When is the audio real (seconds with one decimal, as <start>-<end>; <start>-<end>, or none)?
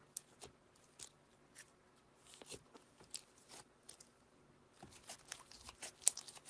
0.0-6.5